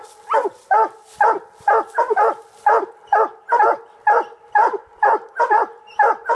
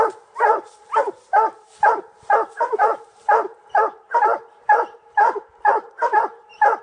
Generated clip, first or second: second